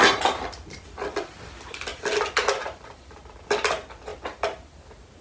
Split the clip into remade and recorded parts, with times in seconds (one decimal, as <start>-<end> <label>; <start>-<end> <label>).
0.0-1.9 remade; 1.9-2.6 recorded; 2.6-4.1 remade; 4.1-5.2 recorded